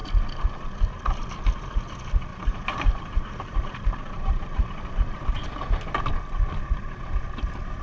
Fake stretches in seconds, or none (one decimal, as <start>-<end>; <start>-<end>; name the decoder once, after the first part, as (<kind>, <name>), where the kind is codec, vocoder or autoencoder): 2.3-6.0 (vocoder, BigVGAN v2); 6.7-7.2